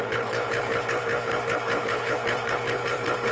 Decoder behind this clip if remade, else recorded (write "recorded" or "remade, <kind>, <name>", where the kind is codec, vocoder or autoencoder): remade, codec, HILCodec